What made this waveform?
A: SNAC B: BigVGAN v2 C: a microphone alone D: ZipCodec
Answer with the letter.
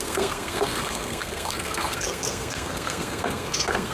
A